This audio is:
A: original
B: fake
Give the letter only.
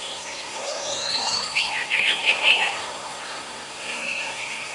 B